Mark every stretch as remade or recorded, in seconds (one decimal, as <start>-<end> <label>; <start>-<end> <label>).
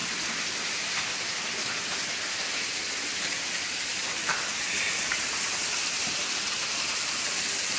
0.0-7.8 recorded